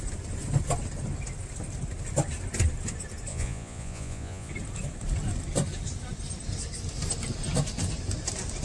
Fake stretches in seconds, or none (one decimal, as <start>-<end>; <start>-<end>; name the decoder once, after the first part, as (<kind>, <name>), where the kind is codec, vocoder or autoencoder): 3.3-4.5 (vocoder, Vocos)